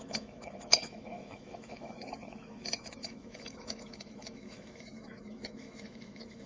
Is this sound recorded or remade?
remade